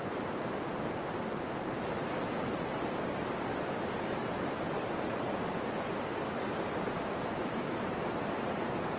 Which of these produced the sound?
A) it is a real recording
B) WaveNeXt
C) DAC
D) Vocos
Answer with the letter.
A